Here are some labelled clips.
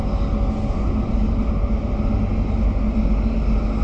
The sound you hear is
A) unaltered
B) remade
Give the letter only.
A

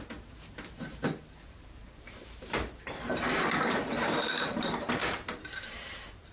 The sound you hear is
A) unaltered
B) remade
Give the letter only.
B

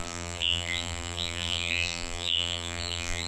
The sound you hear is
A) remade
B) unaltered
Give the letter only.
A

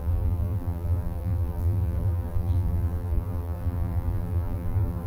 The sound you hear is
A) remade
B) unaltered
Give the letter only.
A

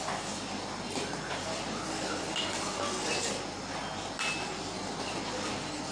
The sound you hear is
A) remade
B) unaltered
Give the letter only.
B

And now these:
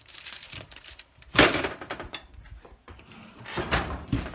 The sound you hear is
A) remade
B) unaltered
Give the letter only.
A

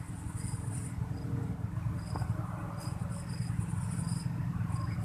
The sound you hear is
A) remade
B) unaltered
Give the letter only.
B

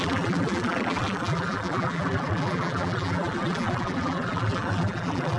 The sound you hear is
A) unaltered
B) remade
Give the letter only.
B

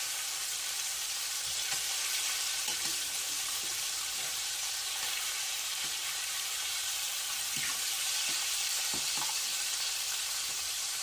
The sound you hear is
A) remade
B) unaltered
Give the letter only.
A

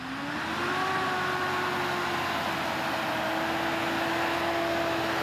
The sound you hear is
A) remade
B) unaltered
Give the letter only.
B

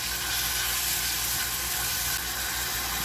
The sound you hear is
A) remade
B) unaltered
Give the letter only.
B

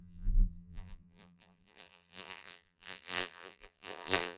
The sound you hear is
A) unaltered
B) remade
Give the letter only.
B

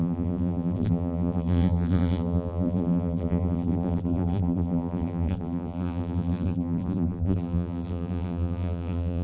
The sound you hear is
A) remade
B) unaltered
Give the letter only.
A